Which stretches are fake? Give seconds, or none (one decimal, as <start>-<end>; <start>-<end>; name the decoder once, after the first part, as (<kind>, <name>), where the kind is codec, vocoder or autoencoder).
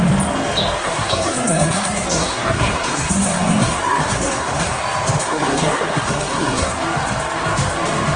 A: 0.8-4.8 (codec, SNAC); 5.2-6.7